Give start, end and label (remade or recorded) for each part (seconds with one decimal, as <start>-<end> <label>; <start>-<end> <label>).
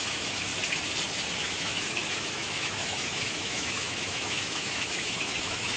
0.0-0.5 remade; 0.5-1.4 recorded; 1.4-5.8 remade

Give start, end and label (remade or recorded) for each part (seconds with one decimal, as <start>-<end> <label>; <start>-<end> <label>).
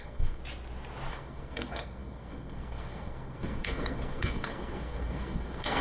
0.0-0.4 remade; 0.4-1.1 recorded; 1.1-5.8 remade